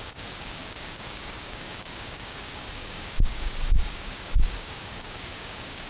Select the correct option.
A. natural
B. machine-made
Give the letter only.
B